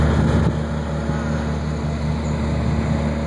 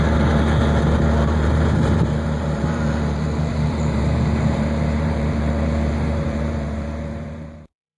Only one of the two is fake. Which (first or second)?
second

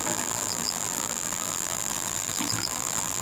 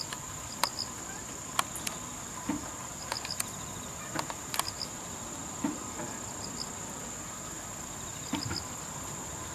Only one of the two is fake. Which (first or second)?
first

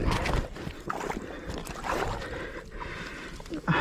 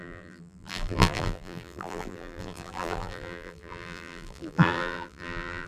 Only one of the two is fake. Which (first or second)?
second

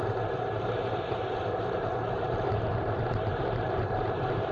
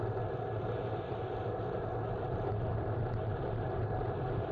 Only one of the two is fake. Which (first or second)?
first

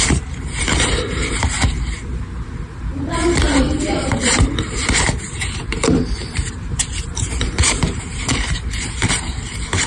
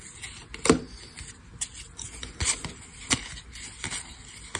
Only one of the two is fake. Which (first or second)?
first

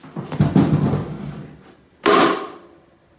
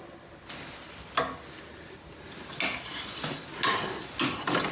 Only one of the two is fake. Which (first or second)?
first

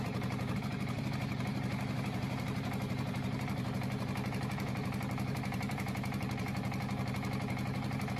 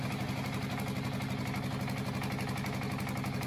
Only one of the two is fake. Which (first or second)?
first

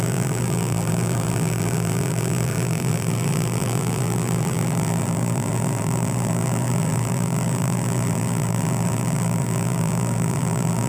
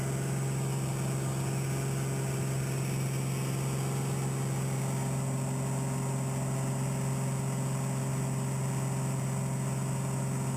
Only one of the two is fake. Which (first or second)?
first